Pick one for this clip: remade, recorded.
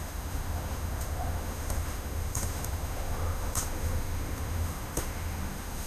remade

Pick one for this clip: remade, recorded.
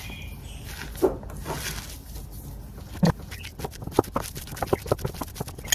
recorded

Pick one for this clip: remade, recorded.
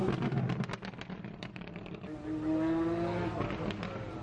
recorded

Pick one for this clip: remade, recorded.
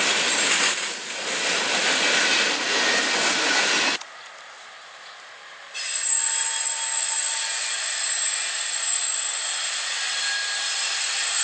recorded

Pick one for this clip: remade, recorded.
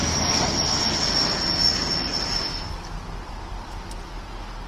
recorded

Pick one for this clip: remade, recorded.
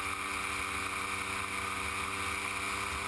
recorded